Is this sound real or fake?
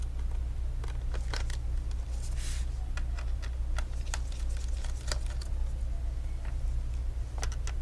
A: real